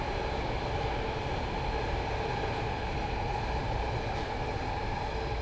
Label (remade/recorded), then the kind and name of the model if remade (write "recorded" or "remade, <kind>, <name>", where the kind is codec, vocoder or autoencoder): recorded